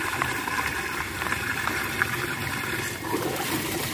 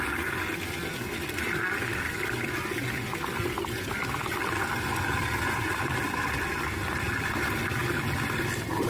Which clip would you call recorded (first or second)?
second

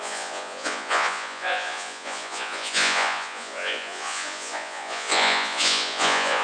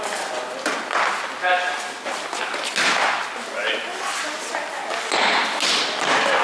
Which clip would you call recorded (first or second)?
second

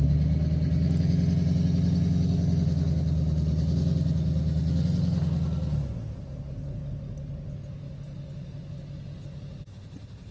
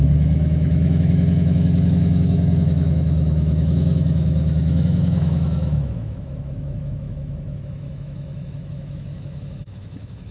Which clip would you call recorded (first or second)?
first